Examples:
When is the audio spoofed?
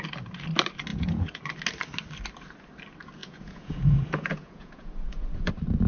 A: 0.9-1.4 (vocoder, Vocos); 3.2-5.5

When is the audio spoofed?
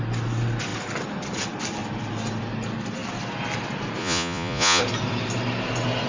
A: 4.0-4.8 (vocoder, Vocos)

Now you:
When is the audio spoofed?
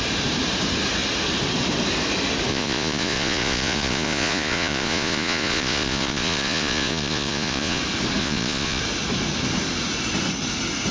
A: 2.5-7.8 (vocoder, Vocos); 8.2-8.8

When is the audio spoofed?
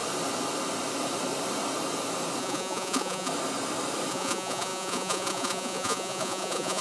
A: 2.4-3.3 (vocoder, Vocos); 4.1-6.8